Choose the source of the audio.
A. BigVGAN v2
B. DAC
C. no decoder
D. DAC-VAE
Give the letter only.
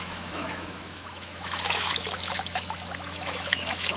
D